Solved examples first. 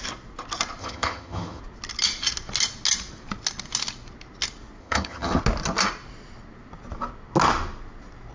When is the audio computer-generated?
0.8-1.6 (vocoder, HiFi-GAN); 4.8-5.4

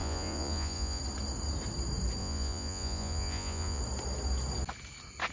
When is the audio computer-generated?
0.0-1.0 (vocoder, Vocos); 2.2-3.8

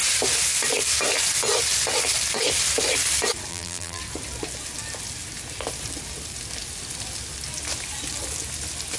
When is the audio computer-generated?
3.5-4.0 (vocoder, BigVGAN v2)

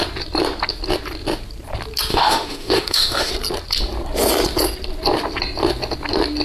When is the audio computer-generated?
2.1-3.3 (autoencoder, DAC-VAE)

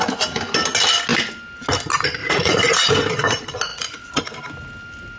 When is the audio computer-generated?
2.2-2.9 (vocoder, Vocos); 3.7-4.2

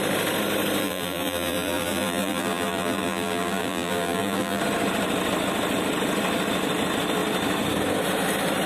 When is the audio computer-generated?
0.8-4.6 (vocoder, BigVGAN v2)